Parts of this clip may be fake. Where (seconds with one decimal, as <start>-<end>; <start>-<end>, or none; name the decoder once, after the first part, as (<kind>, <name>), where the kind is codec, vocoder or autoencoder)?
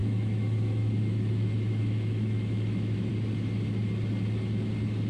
0.0-3.1 (autoencoder, DAC-VAE)